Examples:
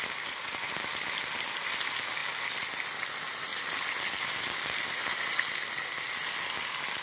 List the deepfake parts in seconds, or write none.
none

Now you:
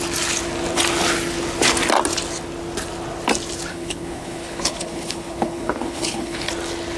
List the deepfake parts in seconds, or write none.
3.7-6.5 (codec, HILCodec)